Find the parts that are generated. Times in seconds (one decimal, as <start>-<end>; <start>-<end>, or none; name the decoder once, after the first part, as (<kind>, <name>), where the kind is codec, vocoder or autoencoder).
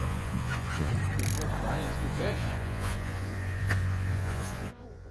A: 0.0-0.9 (vocoder, Vocos); 1.7-5.1